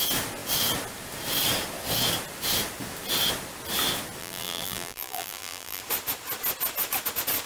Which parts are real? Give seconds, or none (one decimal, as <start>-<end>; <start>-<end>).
0.0-4.2; 5.8-7.5